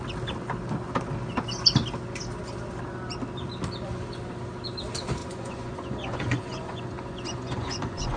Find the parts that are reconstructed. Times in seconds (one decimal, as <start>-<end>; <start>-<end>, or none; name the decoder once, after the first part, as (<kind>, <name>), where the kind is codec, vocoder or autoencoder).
5.2-8.2 (vocoder, Vocos)